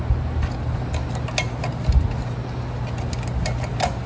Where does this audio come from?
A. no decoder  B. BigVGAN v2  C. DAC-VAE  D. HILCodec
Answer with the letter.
A